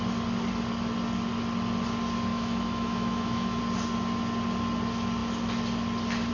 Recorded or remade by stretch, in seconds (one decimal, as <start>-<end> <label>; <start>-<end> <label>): 0.0-2.3 recorded; 2.3-3.6 remade; 3.6-6.3 recorded

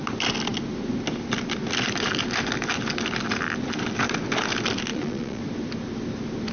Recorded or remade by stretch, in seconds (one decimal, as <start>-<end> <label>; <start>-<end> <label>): 0.0-4.9 recorded; 4.9-5.4 remade; 5.4-6.5 recorded

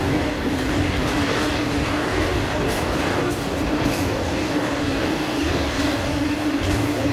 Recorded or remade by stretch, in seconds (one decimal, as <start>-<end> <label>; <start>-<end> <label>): 0.0-7.1 remade

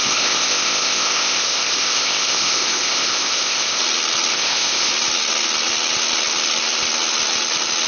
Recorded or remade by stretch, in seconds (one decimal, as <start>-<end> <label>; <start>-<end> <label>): 0.0-3.8 remade; 3.8-4.3 recorded; 4.3-4.9 remade; 4.9-7.9 recorded

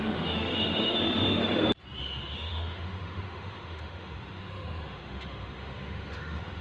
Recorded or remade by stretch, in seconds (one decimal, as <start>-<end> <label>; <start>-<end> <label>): 0.0-1.4 remade; 1.4-2.0 recorded; 2.0-6.6 remade

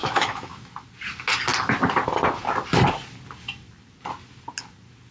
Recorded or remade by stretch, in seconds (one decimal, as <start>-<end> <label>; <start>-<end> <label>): 0.0-0.7 remade; 0.7-5.1 recorded

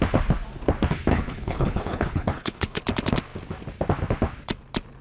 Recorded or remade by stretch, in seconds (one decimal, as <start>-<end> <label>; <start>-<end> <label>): 0.0-1.1 recorded; 1.1-2.8 remade; 2.8-5.0 recorded

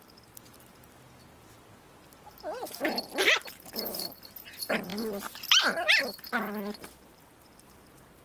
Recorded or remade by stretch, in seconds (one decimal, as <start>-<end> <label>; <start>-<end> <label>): 0.0-8.2 recorded